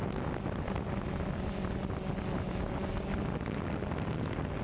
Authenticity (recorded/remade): recorded